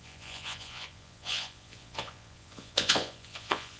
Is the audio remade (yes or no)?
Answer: yes